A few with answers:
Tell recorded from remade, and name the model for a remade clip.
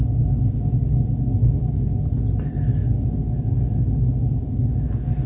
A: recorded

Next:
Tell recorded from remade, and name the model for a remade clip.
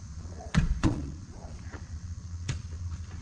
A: remade, vocoder, Vocos